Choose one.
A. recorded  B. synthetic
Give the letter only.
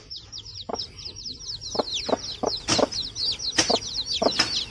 A